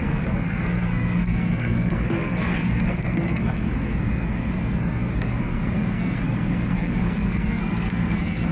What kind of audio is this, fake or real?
fake